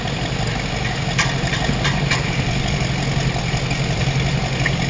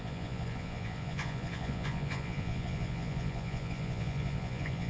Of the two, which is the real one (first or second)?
first